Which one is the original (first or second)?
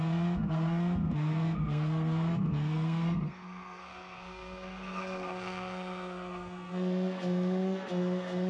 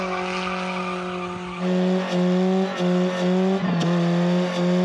second